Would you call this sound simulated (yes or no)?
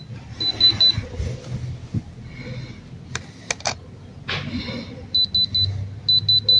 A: no